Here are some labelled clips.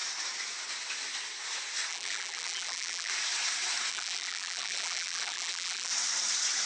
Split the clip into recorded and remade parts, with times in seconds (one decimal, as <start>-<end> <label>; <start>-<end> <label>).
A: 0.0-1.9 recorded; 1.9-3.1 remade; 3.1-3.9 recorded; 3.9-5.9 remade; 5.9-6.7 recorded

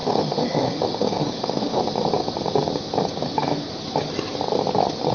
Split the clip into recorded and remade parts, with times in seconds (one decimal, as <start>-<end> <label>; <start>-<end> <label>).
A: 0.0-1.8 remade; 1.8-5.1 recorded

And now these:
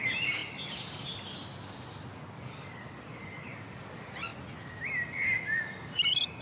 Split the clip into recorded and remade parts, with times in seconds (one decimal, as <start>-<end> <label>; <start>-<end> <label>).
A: 0.0-6.4 recorded